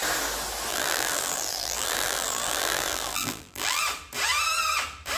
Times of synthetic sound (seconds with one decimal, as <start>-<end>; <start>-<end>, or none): 0.7-3.8